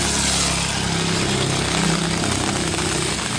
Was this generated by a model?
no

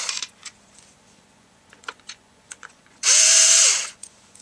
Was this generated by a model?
yes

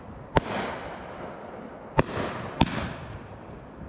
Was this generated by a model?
no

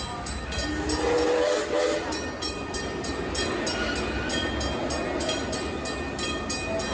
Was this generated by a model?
no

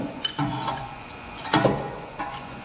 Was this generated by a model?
yes